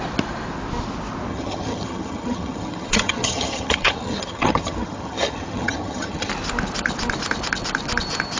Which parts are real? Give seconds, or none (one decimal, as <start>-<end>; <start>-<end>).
0.0-1.3; 6.3-8.4